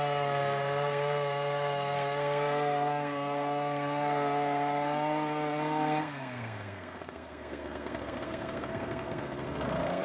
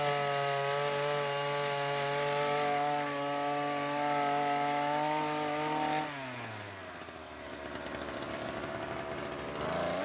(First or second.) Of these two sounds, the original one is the second